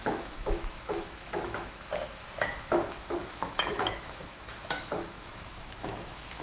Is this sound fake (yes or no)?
yes